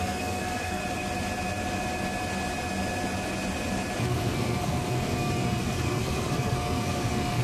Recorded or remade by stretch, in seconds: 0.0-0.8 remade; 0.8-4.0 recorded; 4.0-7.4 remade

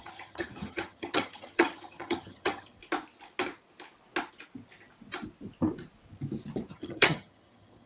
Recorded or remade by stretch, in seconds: 0.0-2.8 remade; 2.8-6.7 recorded; 6.7-7.9 remade

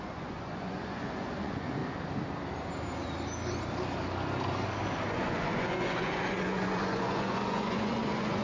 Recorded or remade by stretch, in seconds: 0.0-1.8 remade; 1.8-5.1 recorded; 5.1-8.4 remade

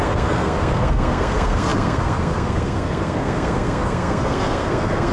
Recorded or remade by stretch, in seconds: 0.0-5.1 remade

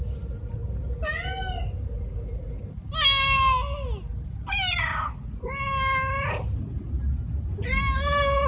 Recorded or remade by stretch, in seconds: 0.0-8.5 recorded

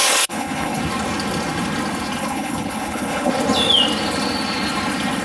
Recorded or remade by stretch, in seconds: 0.0-0.8 remade; 0.8-2.2 recorded; 2.2-3.3 remade; 3.3-5.2 recorded

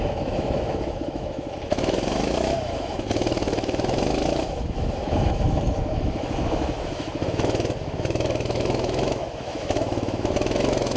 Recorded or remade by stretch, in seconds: 0.0-11.0 remade

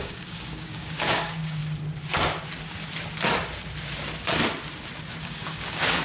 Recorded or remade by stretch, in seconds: 0.0-1.6 remade; 1.6-5.2 recorded; 5.2-6.0 remade